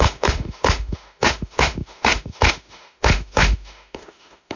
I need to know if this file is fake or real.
fake